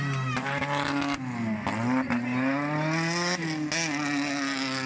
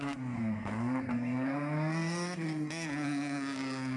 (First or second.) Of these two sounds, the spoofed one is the second